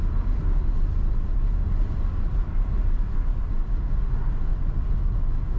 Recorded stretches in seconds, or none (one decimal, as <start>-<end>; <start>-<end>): 0.0-0.4; 3.8-4.5; 5.0-5.6